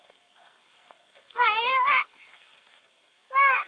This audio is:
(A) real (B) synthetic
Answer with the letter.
B